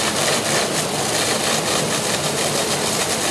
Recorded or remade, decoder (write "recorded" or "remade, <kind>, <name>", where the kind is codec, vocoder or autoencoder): recorded